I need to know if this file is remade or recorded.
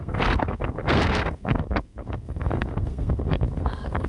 remade